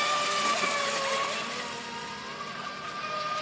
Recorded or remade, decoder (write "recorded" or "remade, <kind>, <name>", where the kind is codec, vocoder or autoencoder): recorded